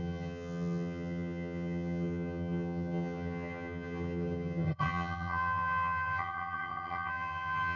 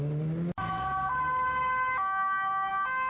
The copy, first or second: first